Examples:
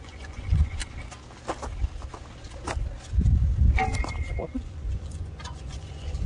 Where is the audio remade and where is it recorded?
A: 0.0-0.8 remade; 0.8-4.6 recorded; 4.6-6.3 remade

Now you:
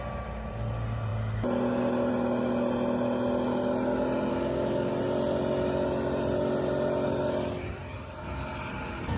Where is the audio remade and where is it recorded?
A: 0.0-4.3 recorded; 4.3-4.9 remade; 4.9-9.2 recorded

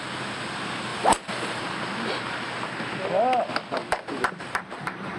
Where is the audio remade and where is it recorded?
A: 0.0-0.9 recorded; 0.9-1.6 remade; 1.6-3.8 recorded; 3.8-5.2 remade

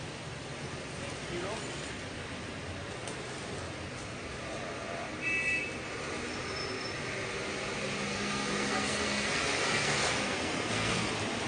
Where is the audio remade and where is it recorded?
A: 0.0-8.1 recorded; 8.1-11.1 remade; 11.1-11.5 recorded

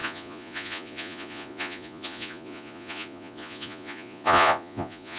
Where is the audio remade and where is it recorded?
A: 0.0-5.2 remade

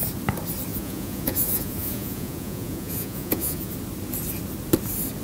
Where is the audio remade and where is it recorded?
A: 0.0-0.7 recorded; 0.7-3.7 remade; 3.7-5.2 recorded

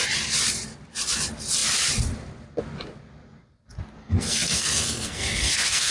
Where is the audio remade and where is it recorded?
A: 0.0-4.0 recorded; 4.0-5.9 remade

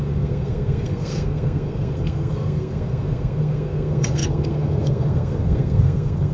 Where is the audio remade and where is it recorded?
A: 0.0-6.3 remade